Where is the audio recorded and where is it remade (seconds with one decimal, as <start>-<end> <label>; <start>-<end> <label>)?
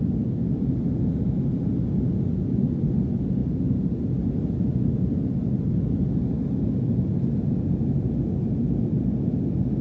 0.0-9.8 recorded